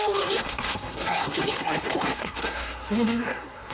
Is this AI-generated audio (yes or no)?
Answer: yes